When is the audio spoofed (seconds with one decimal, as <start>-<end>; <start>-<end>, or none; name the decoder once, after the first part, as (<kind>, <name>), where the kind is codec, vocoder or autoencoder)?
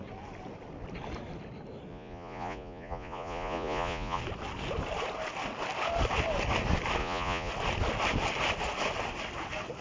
1.9-4.2 (vocoder, Vocos); 7.0-7.5